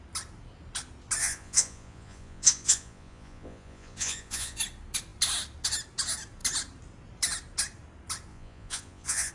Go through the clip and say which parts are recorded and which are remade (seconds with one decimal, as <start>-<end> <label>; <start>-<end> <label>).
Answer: 0.0-1.2 recorded; 1.2-4.6 remade; 4.6-8.3 recorded; 8.3-9.3 remade

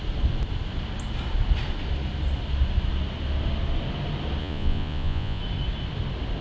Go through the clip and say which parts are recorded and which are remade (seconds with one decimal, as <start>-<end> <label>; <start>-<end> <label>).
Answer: 0.0-4.4 recorded; 4.4-5.4 remade; 5.4-6.4 recorded

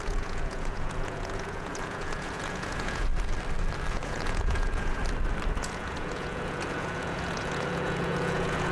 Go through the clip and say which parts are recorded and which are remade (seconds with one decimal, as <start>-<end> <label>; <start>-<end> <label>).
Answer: 0.0-3.1 remade; 3.1-3.9 recorded; 3.9-5.0 remade; 5.0-5.6 recorded; 5.6-8.7 remade

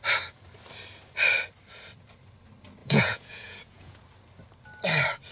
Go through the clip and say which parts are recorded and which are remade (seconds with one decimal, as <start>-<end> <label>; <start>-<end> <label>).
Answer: 0.0-2.8 recorded; 2.8-4.0 remade; 4.0-5.3 recorded

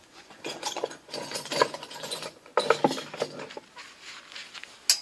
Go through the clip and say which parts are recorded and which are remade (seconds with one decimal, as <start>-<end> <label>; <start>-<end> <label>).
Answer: 0.0-2.5 remade; 2.5-5.0 recorded